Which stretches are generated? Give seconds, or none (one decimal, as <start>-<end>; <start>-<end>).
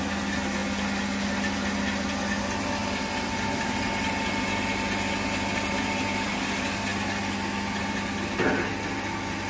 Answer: none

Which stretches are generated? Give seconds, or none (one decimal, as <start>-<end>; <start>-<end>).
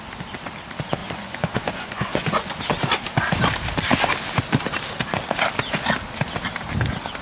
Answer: 1.0-2.6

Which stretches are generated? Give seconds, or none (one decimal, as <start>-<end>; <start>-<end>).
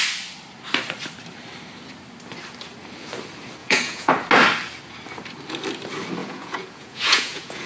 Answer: 3.6-4.1; 6.2-7.7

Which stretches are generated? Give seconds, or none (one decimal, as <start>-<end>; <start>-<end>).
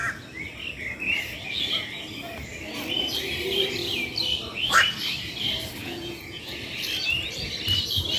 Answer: 5.8-6.6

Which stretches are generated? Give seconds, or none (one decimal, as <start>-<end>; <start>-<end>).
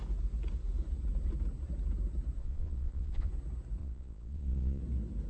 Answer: 2.4-3.3; 3.8-4.8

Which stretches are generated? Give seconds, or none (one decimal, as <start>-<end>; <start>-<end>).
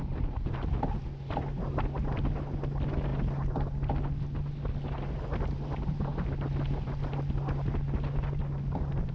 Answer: none